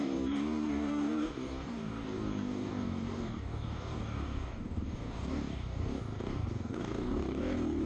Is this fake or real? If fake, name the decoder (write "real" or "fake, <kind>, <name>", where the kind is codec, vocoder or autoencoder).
fake, codec, DAC